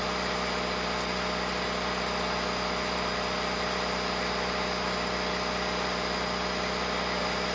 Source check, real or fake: real